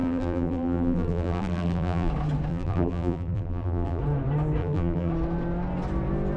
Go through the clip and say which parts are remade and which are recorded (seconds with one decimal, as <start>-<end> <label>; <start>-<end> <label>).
0.0-2.1 remade; 2.1-2.5 recorded; 2.5-4.0 remade; 4.0-4.6 recorded; 4.6-5.1 remade; 5.1-6.4 recorded